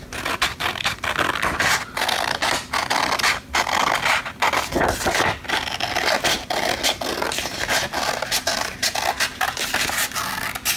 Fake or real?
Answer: real